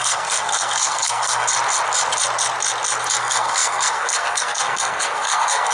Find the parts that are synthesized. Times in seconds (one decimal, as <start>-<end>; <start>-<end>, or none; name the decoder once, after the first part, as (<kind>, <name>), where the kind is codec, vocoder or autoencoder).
0.0-1.5 (codec, SNAC); 3.2-5.7